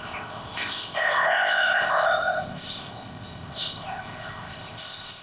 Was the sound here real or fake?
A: fake